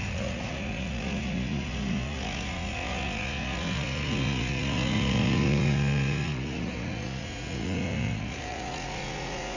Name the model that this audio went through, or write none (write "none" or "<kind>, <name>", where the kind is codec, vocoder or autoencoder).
vocoder, Vocos